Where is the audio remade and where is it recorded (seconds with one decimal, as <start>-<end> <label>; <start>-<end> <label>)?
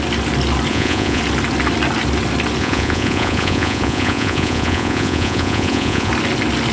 0.0-0.7 recorded; 0.7-1.2 remade; 1.2-2.6 recorded; 2.6-6.1 remade; 6.1-6.7 recorded